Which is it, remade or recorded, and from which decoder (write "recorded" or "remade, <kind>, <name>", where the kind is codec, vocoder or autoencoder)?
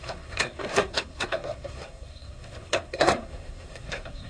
remade, codec, SNAC